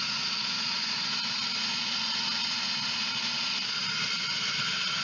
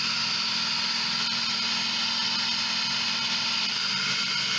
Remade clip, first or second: first